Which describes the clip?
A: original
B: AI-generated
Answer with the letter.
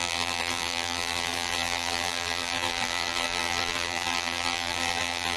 B